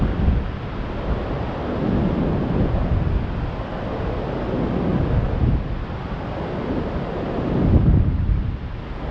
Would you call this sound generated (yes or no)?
no